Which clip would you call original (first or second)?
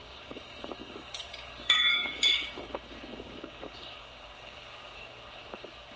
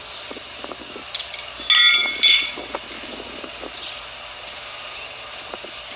second